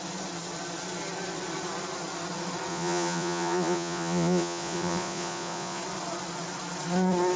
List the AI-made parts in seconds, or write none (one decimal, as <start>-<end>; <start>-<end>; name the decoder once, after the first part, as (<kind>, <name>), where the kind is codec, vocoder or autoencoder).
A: 2.7-5.8 (vocoder, Vocos)